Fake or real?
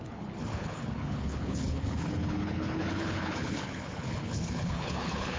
fake